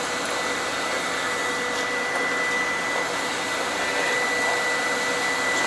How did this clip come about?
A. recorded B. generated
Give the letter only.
A